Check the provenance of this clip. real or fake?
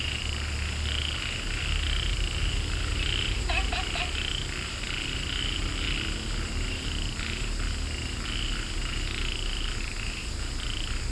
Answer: real